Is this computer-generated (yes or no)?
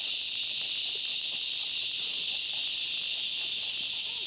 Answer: yes